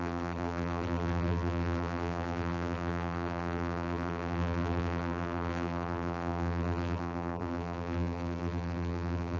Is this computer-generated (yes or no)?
yes